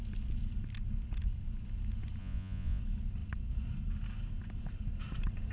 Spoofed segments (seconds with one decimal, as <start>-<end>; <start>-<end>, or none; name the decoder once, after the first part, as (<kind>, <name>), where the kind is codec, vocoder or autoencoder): 2.2-2.8 (vocoder, Vocos)